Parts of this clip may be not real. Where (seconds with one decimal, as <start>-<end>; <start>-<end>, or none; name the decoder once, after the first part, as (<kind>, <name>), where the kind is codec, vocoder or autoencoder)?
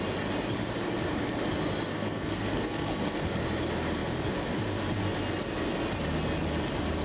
1.9-3.4 (codec, SNAC)